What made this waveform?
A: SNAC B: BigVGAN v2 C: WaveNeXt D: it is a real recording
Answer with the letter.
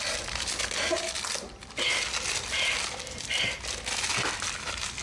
D